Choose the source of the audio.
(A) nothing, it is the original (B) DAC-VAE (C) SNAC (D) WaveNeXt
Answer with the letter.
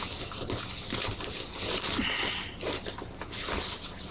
A